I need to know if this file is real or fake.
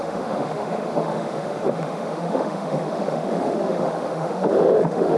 fake